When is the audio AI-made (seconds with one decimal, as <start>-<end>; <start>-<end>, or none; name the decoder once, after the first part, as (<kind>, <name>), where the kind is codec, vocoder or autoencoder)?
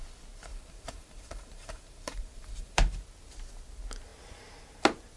0.5-3.0 (vocoder, BigVGAN v2)